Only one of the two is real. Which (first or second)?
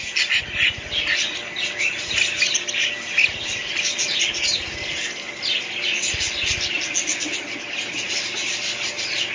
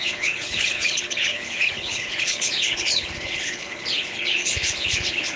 first